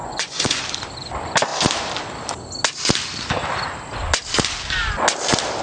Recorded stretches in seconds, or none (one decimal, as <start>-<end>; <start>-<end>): 0.6-5.6